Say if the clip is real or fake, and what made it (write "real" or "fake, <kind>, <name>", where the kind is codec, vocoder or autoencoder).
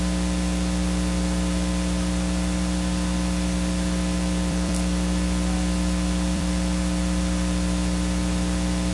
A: fake, vocoder, BigVGAN v2